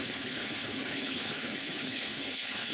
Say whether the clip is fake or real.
fake